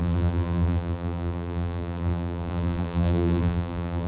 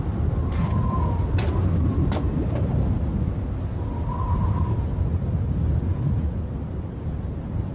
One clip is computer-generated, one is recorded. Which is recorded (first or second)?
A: second